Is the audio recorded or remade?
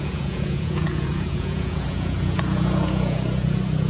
remade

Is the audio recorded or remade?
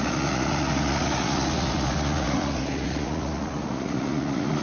remade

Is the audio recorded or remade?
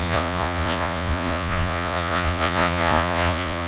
remade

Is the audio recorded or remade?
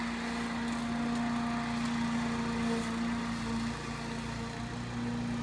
recorded